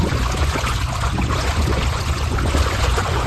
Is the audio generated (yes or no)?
yes